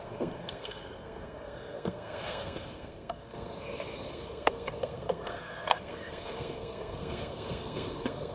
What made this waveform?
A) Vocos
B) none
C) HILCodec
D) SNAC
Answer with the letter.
D